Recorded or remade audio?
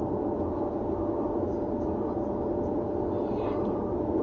recorded